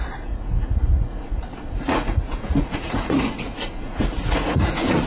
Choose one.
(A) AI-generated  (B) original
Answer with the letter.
A